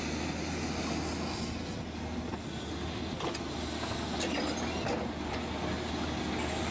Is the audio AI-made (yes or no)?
no